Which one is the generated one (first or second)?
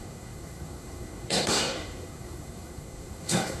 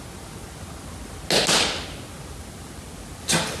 first